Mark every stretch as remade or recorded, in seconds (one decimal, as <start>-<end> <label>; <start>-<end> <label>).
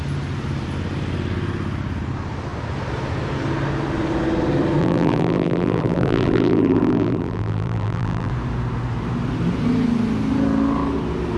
0.0-4.8 recorded; 4.8-8.3 remade; 8.3-11.4 recorded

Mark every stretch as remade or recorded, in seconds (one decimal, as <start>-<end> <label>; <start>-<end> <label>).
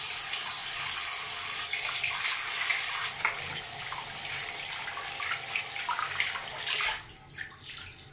0.0-8.1 recorded